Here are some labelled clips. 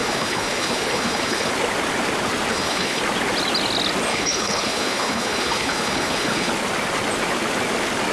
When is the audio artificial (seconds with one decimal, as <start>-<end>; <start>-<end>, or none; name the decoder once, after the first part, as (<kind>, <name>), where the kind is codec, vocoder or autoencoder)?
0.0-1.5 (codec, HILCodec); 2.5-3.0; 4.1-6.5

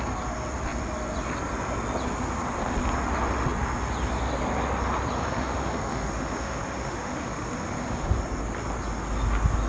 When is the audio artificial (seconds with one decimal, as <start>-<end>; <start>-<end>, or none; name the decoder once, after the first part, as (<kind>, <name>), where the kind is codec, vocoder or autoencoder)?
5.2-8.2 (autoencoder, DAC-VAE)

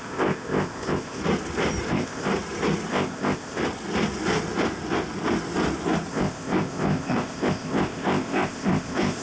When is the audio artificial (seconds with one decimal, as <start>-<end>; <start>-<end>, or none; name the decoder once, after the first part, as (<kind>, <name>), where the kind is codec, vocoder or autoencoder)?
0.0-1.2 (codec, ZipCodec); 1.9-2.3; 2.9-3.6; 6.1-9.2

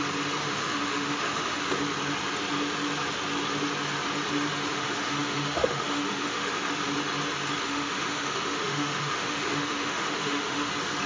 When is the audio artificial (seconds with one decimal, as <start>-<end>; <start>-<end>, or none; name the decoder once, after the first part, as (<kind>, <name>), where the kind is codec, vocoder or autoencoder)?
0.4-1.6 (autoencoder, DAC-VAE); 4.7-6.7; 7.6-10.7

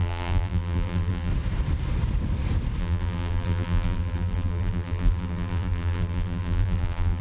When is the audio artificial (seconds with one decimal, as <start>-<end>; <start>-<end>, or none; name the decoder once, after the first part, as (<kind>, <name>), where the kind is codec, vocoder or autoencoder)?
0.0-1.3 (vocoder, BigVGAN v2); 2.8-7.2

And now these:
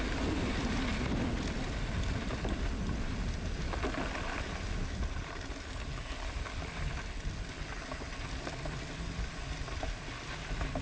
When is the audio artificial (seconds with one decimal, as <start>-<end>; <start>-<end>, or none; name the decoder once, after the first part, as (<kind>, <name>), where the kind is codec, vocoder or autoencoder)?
none